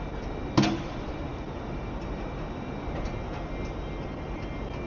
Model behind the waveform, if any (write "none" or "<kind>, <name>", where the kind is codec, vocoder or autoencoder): none